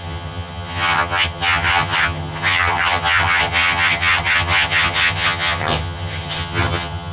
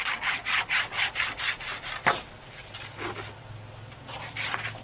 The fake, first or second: first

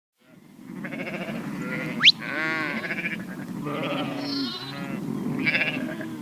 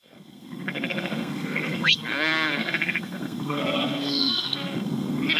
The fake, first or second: second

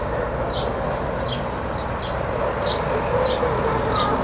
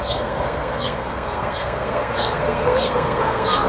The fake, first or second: second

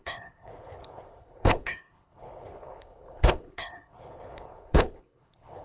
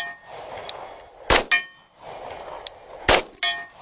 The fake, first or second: first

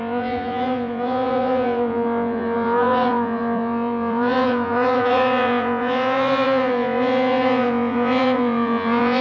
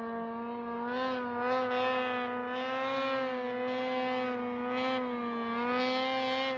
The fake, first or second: first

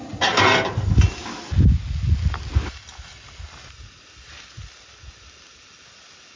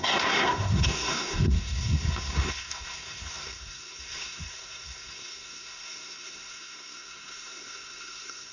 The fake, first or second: second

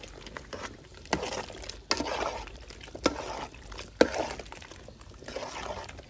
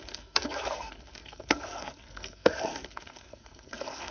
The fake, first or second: second